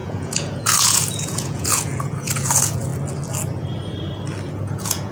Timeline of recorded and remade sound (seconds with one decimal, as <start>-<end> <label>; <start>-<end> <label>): 0.0-2.9 remade; 2.9-4.5 recorded; 4.5-5.1 remade